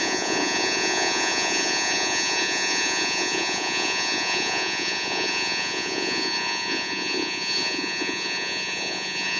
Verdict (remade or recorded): remade